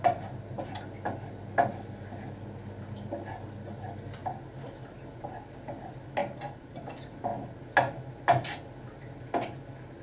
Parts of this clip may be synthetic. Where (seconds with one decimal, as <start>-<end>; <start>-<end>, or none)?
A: 6.2-6.8